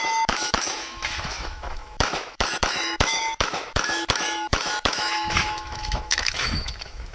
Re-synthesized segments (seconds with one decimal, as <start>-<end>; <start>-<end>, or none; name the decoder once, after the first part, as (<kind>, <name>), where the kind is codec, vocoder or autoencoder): 0.0-7.1 (autoencoder, DAC-VAE)